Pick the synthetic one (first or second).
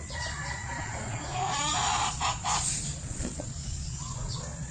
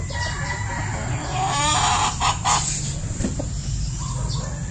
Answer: first